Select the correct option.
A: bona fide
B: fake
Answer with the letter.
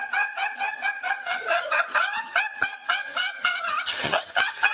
B